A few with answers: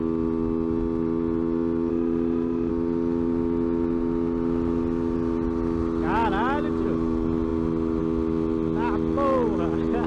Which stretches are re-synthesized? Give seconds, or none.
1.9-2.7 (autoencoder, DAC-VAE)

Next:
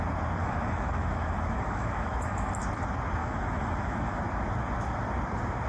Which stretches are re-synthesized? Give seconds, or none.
0.4-2.5 (autoencoder, DAC-VAE); 3.2-4.2

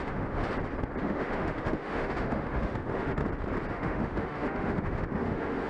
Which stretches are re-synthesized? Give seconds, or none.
0.0-0.4 (autoencoder, DAC-VAE); 1.0-3.2; 3.7-5.7

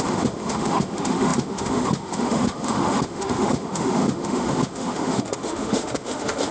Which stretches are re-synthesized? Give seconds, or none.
0.0-6.5 (autoencoder, DAC-VAE)